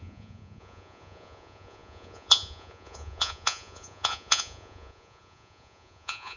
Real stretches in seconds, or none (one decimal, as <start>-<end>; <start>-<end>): none